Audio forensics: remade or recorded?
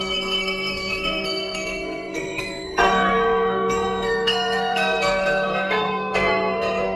remade